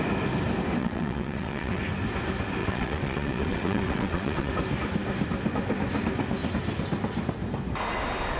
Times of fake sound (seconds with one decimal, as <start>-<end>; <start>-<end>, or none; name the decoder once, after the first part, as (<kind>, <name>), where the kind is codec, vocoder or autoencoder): 0.8-1.8 (vocoder, WaveNeXt); 2.6-4.5